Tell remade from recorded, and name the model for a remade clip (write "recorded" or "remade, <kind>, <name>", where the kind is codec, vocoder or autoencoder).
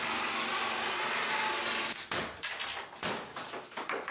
recorded